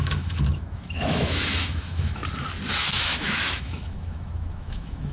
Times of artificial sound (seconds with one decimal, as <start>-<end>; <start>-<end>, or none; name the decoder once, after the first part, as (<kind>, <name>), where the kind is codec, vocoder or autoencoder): 0.0-2.2 (autoencoder, DAC-VAE); 2.7-5.1